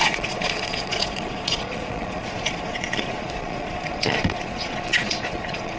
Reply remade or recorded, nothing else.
remade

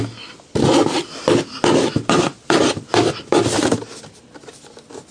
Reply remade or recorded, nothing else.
recorded